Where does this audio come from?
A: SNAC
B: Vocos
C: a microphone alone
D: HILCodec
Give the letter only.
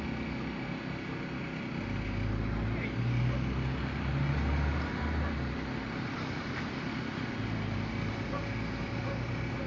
C